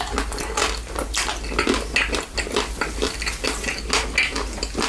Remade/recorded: recorded